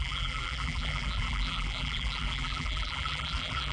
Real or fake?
fake